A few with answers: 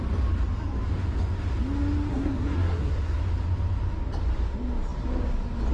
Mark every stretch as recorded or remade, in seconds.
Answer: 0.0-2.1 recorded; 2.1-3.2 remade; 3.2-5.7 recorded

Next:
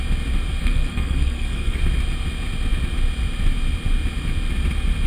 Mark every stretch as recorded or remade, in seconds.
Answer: 0.0-0.6 recorded; 0.6-1.8 remade; 1.8-5.1 recorded

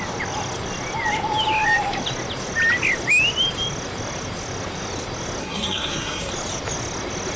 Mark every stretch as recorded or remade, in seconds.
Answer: 0.0-5.4 recorded; 5.4-6.3 remade; 6.3-7.4 recorded

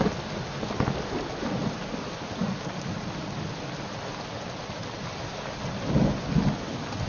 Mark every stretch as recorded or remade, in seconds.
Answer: 0.0-7.1 recorded

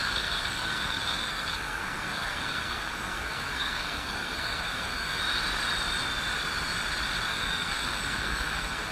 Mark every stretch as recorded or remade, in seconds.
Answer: 0.0-5.2 remade; 5.2-7.3 recorded; 7.3-8.9 remade